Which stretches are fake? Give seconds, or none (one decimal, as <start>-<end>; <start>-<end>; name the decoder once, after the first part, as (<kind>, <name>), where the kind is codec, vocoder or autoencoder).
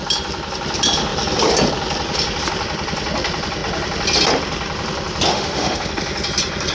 5.3-5.9 (autoencoder, DAC-VAE)